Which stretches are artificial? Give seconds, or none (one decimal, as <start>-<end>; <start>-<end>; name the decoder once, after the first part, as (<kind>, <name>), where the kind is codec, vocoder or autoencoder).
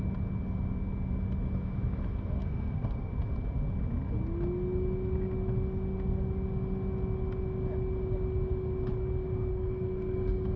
2.4-3.1 (codec, SNAC); 9.5-10.6